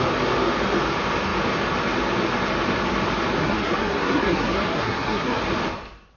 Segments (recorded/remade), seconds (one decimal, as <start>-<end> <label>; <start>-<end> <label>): 0.0-3.4 recorded; 3.4-5.4 remade; 5.4-6.2 recorded